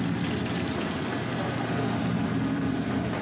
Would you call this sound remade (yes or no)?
no